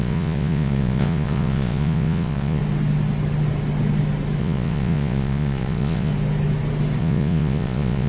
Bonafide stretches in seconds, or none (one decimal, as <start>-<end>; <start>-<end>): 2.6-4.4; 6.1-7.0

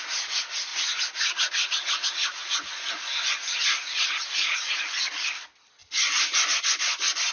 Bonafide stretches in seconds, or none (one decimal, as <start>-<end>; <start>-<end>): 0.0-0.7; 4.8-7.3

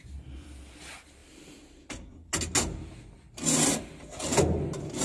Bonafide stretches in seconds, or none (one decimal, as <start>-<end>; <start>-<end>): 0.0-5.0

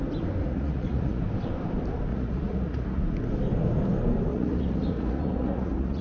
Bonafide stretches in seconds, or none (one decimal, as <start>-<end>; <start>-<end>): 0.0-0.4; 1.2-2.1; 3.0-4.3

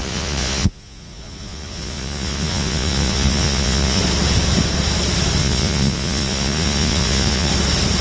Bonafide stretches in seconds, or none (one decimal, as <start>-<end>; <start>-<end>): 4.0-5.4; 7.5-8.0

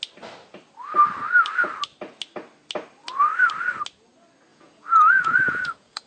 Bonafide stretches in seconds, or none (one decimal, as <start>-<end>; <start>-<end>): 0.0-4.5